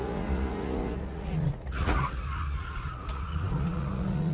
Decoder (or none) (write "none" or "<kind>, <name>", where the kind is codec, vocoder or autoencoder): vocoder, Vocos